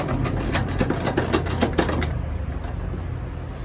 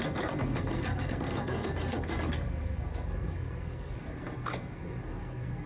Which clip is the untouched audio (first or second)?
first